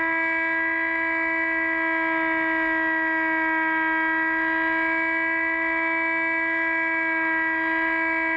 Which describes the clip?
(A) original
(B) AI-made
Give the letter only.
A